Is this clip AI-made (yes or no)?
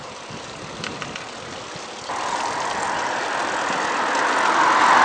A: no